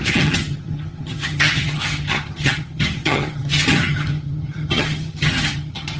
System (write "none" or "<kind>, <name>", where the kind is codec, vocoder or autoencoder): vocoder, HiFi-GAN